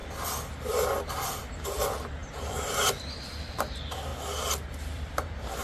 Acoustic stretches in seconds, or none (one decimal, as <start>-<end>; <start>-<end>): 0.0-1.4; 4.1-4.7